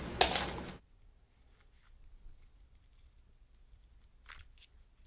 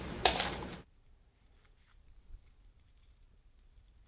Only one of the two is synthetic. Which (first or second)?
second